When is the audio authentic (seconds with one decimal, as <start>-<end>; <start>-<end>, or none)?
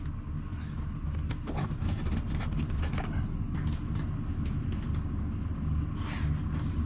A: 0.0-6.9